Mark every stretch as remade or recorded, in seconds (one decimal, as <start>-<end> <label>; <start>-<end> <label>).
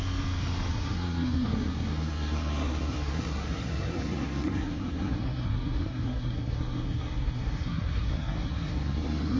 0.0-0.7 recorded; 0.7-9.4 remade